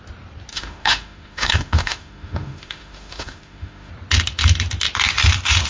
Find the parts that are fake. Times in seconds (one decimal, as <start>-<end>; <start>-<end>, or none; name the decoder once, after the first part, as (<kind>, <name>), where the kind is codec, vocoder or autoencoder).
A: 0.5-3.9 (autoencoder, DAC-VAE)